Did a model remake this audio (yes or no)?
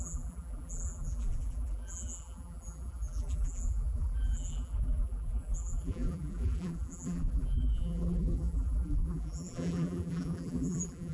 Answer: yes